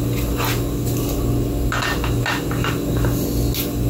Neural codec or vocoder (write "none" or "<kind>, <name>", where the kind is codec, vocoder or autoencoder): none